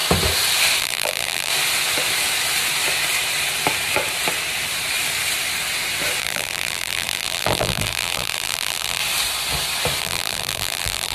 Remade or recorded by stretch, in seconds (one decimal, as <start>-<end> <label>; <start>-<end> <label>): 0.0-0.8 recorded; 0.8-1.5 remade; 1.5-6.2 recorded; 6.2-9.0 remade; 9.0-10.0 recorded; 10.0-11.1 remade